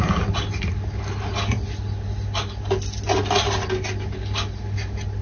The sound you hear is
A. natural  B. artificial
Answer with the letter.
A